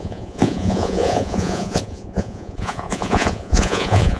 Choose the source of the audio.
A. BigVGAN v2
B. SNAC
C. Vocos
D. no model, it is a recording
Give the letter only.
C